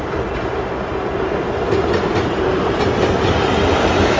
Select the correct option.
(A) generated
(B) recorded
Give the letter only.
B